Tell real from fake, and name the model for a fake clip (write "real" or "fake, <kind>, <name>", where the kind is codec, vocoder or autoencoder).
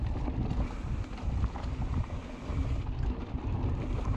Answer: real